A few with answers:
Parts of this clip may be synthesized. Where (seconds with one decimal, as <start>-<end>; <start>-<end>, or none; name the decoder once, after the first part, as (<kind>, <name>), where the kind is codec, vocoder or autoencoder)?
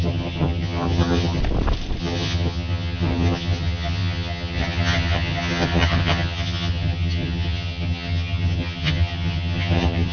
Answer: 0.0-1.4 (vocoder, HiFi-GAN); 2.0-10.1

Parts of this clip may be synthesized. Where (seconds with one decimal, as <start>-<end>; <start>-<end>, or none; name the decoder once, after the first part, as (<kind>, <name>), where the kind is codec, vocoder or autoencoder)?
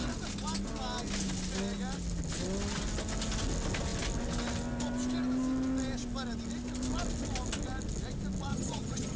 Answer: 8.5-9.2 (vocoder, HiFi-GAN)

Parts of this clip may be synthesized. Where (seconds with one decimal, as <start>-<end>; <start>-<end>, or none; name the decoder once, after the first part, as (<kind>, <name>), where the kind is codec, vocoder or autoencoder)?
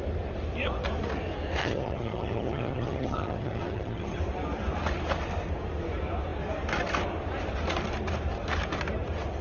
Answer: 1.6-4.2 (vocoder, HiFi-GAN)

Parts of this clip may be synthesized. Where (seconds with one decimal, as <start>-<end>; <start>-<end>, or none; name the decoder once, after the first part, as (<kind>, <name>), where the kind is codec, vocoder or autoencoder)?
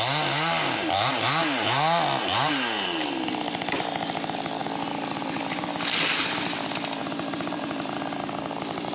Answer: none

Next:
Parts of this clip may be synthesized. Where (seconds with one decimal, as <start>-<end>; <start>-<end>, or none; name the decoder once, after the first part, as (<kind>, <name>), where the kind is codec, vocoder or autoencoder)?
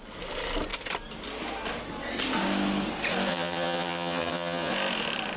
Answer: 3.3-4.7 (vocoder, HiFi-GAN)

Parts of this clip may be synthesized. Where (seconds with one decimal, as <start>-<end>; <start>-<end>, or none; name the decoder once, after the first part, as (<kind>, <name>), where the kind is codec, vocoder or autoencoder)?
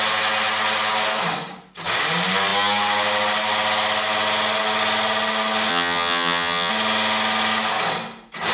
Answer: 5.7-6.7 (vocoder, HiFi-GAN)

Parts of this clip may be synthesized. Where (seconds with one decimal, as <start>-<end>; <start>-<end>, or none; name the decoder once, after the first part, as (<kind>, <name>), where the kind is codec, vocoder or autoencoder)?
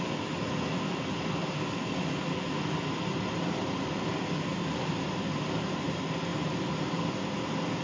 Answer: none